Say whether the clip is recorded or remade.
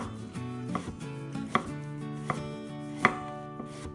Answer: recorded